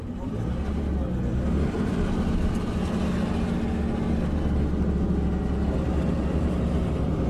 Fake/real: real